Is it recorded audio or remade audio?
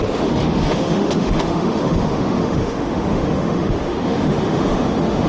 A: remade